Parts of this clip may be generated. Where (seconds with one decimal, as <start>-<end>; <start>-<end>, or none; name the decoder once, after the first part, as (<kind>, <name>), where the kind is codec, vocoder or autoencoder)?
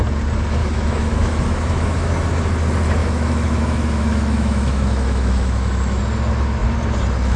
0.6-2.1 (autoencoder, DAC-VAE); 3.0-6.0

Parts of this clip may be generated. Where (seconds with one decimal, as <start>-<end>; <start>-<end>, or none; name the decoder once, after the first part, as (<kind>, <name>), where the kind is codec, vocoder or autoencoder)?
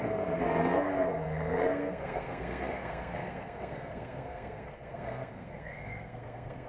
0.0-6.7 (codec, SNAC)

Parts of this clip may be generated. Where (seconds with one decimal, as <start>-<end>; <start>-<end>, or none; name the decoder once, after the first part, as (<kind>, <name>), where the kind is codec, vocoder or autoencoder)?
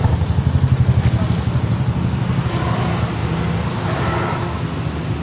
none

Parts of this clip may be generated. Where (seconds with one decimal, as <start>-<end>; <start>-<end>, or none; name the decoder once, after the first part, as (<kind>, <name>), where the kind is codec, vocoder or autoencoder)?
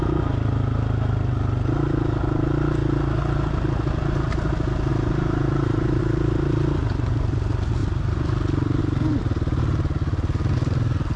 4.9-6.0 (vocoder, BigVGAN v2)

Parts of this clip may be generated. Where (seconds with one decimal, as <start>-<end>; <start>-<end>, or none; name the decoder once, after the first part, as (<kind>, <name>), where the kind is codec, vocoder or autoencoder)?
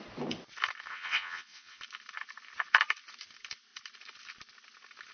0.9-1.8 (vocoder, WaveNeXt)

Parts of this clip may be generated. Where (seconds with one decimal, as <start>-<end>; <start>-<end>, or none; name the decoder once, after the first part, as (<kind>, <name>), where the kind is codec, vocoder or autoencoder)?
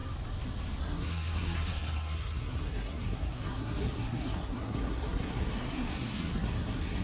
0.8-7.0 (codec, SNAC)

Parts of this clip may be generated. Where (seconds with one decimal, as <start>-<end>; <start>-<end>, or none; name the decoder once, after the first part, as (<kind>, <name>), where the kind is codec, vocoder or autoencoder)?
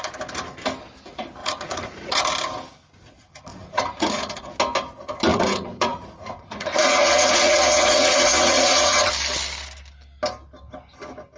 1.4-2.2 (vocoder, Vocos); 3.5-4.4; 5.3-9.1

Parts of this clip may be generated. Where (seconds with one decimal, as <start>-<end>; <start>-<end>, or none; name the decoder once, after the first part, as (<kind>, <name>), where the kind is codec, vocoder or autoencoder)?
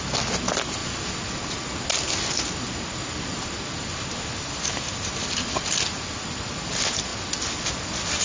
none